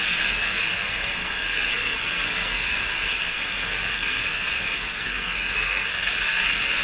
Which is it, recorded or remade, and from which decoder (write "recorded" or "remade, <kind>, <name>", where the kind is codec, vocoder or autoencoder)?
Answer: remade, codec, SNAC